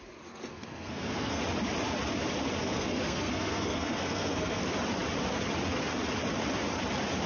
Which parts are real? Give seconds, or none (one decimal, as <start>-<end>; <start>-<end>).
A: 0.0-0.5; 1.4-2.6; 4.6-7.3